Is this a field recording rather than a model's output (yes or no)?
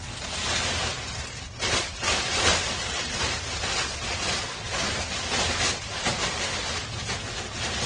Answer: yes